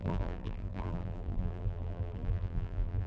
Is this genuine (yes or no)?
no